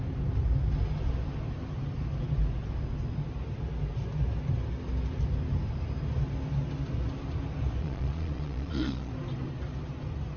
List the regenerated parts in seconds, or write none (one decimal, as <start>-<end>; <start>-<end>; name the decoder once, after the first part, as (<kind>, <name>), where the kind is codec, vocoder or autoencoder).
7.8-9.1 (vocoder, Vocos)